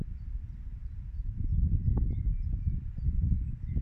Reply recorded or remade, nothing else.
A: recorded